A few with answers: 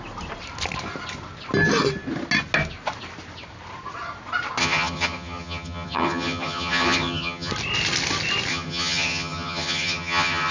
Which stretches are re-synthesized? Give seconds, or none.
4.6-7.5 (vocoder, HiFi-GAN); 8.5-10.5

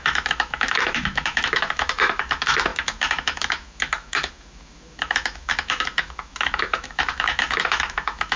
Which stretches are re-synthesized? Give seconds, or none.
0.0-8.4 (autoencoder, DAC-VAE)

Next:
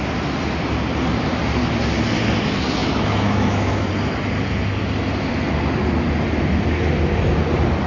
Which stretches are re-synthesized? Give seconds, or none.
2.8-3.9 (autoencoder, DAC-VAE)